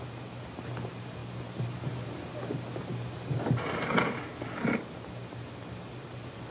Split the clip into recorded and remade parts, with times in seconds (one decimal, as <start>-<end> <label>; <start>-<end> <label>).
0.0-6.5 recorded